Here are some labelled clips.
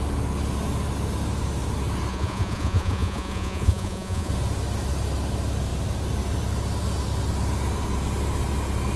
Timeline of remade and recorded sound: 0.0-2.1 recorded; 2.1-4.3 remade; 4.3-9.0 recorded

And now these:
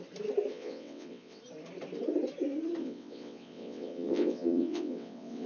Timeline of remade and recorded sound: 0.0-0.5 recorded; 0.5-1.4 remade; 1.4-2.8 recorded; 2.8-5.5 remade